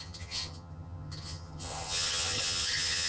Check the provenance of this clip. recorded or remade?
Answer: remade